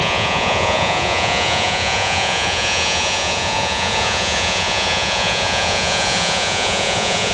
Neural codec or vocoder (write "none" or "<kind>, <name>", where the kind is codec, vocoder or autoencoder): vocoder, Vocos